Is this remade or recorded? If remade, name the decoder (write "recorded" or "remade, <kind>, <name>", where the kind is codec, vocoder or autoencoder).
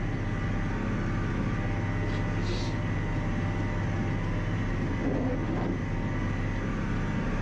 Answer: recorded